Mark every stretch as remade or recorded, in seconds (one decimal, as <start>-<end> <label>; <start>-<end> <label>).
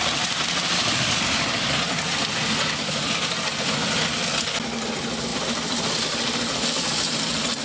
0.0-5.3 recorded; 5.3-5.9 remade; 5.9-7.6 recorded